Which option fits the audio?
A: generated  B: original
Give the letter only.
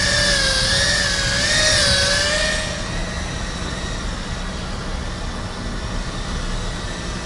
B